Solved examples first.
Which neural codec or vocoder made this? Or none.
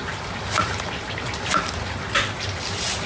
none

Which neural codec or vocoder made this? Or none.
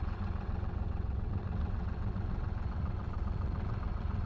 vocoder, WaveNeXt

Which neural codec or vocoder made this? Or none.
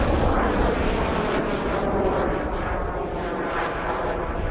none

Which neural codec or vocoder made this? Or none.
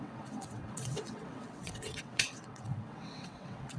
vocoder, WaveNeXt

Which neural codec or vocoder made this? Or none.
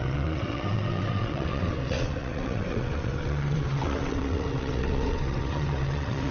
vocoder, WaveNeXt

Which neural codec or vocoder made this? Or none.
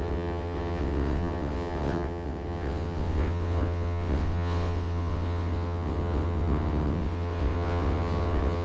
vocoder, WaveNeXt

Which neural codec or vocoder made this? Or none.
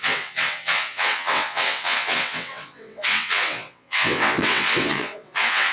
vocoder, WaveNeXt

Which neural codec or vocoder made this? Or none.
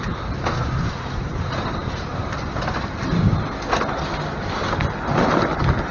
none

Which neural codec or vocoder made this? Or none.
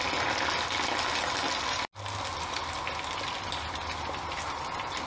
none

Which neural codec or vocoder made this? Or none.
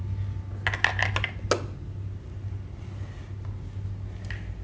none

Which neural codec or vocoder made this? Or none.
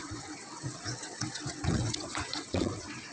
vocoder, WaveNeXt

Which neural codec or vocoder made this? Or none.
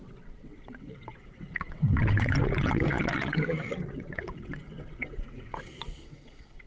vocoder, WaveNeXt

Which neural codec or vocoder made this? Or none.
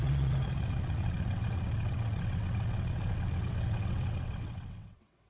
vocoder, WaveNeXt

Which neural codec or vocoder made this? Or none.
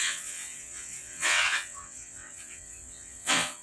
vocoder, WaveNeXt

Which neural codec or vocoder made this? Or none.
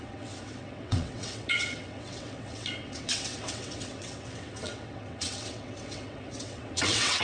vocoder, WaveNeXt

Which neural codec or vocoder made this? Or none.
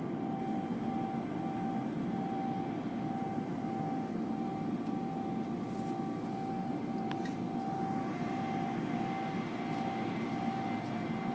none